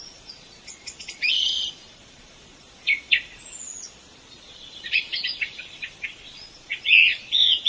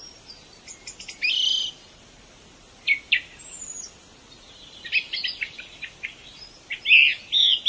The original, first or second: second